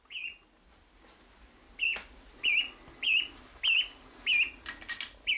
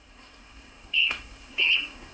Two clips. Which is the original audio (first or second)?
first